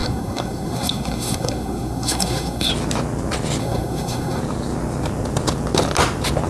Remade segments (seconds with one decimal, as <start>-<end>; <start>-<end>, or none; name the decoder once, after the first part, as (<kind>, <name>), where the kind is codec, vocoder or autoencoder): 0.0-2.7 (codec, SNAC); 3.6-4.4